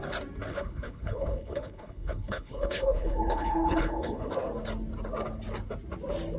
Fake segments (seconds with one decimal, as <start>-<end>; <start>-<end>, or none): 0.5-4.3